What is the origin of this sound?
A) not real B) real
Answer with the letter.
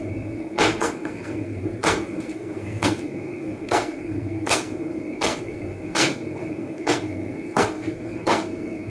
A